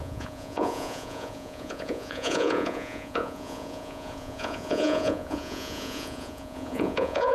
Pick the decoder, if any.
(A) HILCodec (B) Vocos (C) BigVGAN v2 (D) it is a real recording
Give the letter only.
B